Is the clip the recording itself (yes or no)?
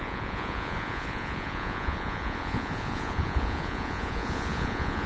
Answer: no